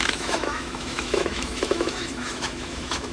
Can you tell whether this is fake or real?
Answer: fake